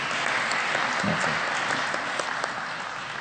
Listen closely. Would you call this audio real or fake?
real